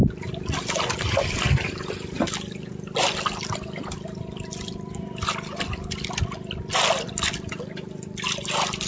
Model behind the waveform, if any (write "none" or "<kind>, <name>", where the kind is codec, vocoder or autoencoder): none